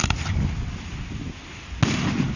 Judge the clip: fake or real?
real